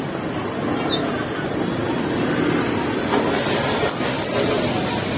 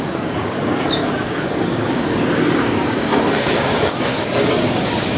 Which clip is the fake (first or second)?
second